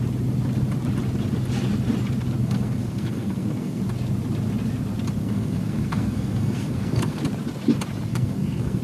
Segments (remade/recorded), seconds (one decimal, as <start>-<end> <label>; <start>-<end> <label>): 0.0-2.4 recorded; 2.4-3.8 remade; 3.8-5.2 recorded; 5.2-7.2 remade; 7.2-8.1 recorded; 8.1-8.8 remade